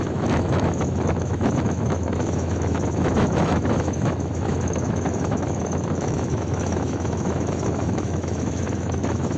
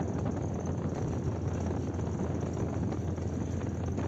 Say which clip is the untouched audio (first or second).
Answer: second